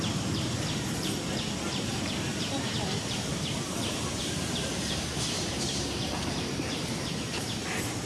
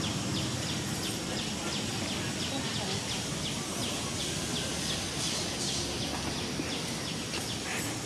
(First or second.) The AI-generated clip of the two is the first